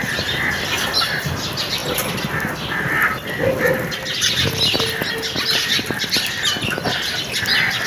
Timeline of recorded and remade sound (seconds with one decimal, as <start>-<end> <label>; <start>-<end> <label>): 0.0-1.8 remade; 1.8-5.1 recorded; 5.1-7.9 remade